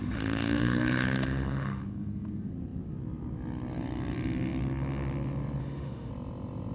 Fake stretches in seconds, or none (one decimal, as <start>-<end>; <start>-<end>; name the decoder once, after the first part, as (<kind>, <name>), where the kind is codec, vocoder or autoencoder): 0.0-1.8 (autoencoder, DAC-VAE); 5.6-6.1